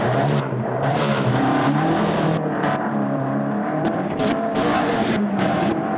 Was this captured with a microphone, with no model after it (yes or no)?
no